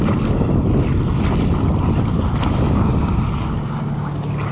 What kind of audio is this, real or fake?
real